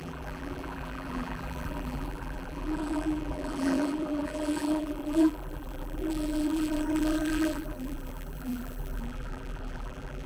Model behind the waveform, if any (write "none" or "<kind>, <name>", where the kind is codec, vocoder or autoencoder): vocoder, BigVGAN v2